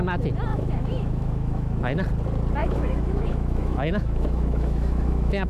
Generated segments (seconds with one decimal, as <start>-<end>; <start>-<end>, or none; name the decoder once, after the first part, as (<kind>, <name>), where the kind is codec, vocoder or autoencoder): 0.5-1.8 (autoencoder, DAC-VAE); 2.6-5.5